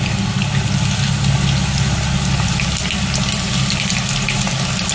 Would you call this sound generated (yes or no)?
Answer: no